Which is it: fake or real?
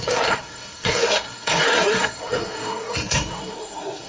fake